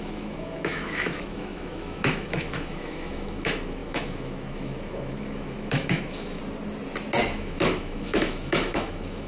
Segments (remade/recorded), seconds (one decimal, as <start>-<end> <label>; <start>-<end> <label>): 0.0-6.4 remade; 6.4-7.2 recorded; 7.2-9.3 remade